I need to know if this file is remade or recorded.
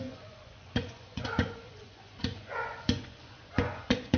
remade